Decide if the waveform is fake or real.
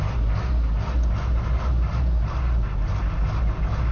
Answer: real